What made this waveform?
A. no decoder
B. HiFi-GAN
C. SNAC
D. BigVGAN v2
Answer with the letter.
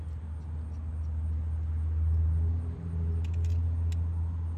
A